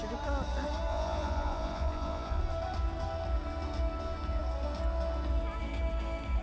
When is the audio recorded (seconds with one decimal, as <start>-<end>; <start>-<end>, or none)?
0.0-0.9; 2.4-6.4